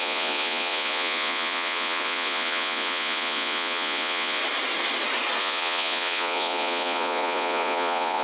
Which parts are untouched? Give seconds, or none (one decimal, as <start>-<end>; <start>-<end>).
4.4-5.4